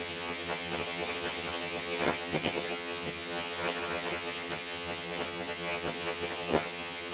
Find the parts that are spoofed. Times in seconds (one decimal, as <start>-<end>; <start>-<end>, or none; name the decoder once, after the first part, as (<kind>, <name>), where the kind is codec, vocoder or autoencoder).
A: 0.0-7.1 (vocoder, HiFi-GAN)

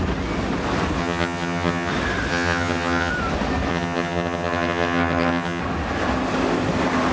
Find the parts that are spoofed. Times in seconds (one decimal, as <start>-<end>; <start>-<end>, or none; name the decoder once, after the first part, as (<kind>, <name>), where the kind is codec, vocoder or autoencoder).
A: 1.0-1.9 (vocoder, HiFi-GAN); 2.3-3.1; 3.7-5.6

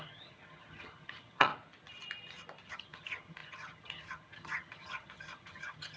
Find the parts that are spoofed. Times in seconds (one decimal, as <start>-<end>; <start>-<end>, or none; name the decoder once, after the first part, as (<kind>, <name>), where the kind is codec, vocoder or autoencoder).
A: 0.0-1.5 (vocoder, HiFi-GAN); 2.7-6.0

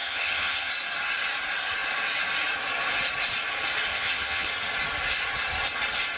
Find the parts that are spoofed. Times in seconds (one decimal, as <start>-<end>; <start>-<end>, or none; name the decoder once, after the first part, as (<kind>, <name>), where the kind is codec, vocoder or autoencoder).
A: 0.0-0.7 (vocoder, HiFi-GAN); 3.9-4.5

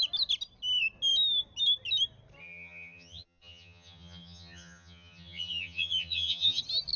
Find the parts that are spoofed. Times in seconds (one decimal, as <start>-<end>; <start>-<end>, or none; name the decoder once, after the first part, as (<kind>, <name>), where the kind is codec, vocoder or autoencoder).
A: 2.4-6.6 (vocoder, HiFi-GAN)